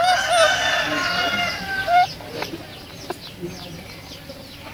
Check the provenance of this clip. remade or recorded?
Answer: recorded